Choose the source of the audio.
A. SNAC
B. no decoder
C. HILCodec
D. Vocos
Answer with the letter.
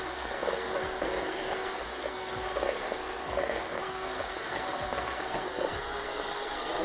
A